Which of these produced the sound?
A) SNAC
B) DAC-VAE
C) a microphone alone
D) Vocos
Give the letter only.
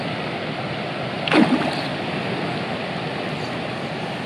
C